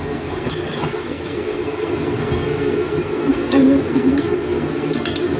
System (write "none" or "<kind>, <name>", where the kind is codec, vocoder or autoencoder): codec, SNAC